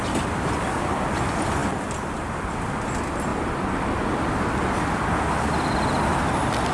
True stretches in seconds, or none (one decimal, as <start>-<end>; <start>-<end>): 0.0-6.7